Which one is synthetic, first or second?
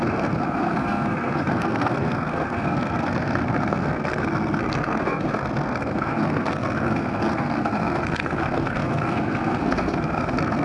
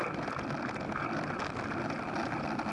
first